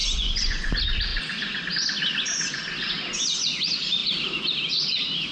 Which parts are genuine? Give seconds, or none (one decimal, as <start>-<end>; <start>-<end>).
0.7-5.3